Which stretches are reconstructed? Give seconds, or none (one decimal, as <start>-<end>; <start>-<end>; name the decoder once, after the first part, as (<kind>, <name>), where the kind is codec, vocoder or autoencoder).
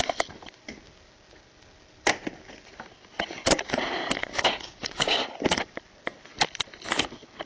4.2-5.2 (codec, DAC)